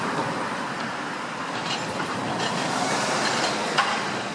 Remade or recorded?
remade